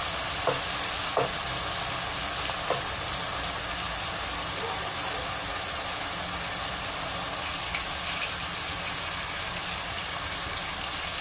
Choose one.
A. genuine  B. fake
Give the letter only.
A